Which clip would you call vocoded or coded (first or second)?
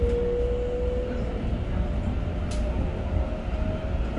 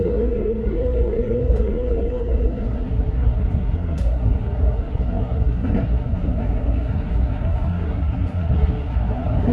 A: second